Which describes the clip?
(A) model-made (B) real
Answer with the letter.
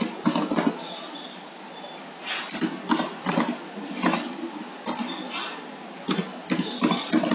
B